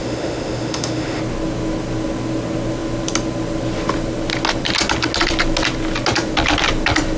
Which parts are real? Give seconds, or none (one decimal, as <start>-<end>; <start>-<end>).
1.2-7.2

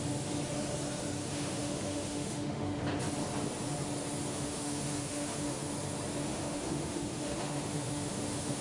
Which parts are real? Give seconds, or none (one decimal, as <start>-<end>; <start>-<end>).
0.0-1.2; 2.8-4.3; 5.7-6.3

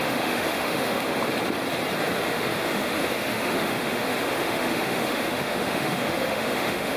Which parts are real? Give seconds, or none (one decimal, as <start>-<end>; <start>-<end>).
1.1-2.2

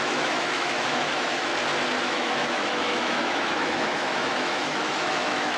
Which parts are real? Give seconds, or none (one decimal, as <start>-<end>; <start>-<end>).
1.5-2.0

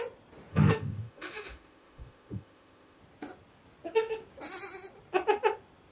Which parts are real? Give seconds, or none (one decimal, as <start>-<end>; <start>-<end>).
0.0-0.5; 3.0-5.9